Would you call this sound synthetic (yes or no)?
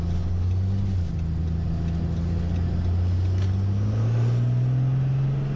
no